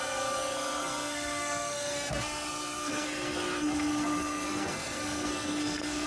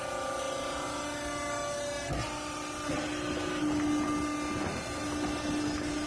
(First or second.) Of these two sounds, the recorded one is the second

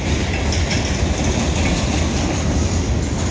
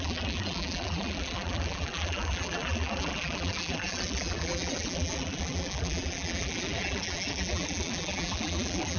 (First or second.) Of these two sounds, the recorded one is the first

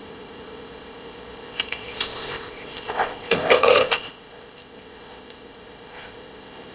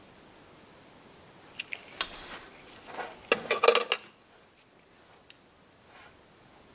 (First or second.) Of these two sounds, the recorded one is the second